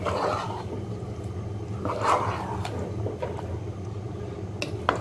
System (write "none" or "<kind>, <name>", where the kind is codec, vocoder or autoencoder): none